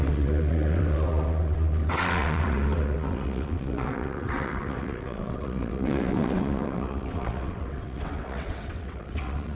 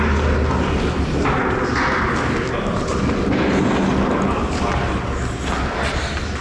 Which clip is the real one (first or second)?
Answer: second